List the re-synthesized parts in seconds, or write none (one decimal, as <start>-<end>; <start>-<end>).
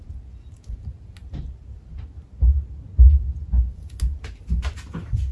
none